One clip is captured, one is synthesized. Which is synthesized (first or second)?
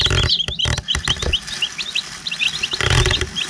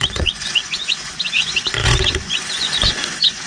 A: second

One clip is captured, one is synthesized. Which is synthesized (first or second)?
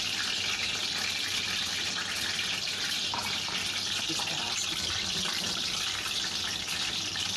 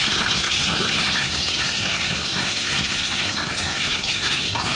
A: second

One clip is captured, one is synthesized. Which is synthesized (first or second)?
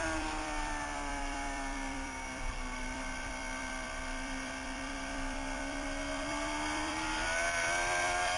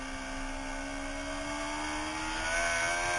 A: first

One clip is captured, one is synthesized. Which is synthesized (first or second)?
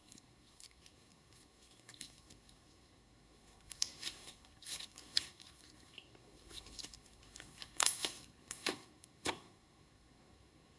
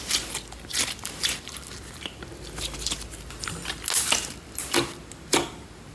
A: first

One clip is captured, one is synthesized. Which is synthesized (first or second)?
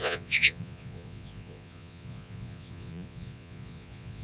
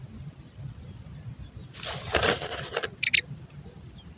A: first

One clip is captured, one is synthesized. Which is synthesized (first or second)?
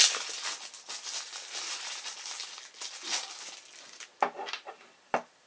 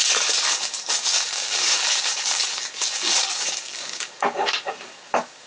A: second